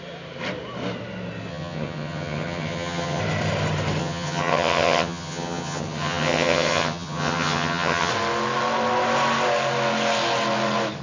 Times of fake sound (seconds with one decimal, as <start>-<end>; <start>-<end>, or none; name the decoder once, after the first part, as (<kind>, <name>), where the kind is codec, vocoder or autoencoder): 1.5-3.2 (vocoder, HiFi-GAN); 4.0-8.1